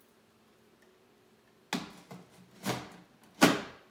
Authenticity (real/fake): real